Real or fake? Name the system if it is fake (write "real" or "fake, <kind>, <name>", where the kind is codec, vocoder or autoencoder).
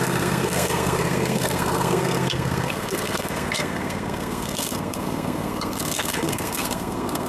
fake, codec, SNAC